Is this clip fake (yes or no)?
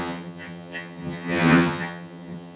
yes